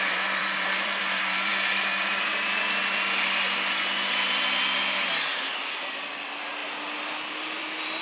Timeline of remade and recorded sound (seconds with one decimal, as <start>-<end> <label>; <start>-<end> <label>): 0.0-1.5 remade; 1.5-5.8 recorded; 5.8-6.6 remade; 6.6-7.6 recorded; 7.6-8.0 remade